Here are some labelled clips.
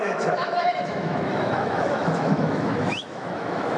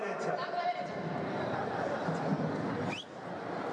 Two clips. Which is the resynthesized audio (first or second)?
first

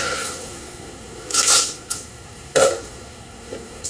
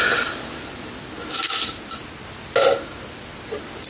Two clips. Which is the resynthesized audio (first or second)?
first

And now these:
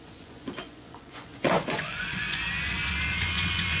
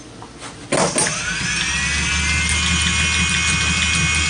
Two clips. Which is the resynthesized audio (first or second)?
first